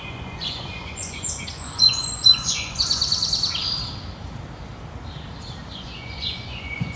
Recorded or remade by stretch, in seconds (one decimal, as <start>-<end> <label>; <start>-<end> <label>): 0.0-3.0 remade; 3.0-5.7 recorded; 5.7-7.0 remade